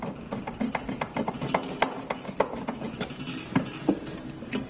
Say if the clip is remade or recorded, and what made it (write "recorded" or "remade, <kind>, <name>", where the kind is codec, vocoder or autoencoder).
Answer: recorded